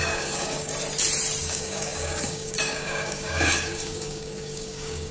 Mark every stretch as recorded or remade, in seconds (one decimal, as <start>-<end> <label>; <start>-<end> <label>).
0.0-0.7 remade; 0.7-1.4 recorded; 1.4-5.1 remade